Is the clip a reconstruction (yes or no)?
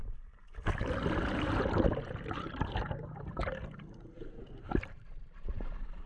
yes